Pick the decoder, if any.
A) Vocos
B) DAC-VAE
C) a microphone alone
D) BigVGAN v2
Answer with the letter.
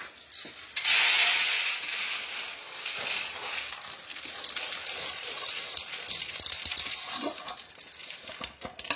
C